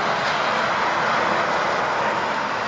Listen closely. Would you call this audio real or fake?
real